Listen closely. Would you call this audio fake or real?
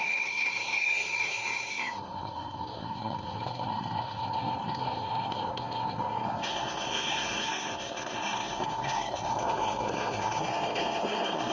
fake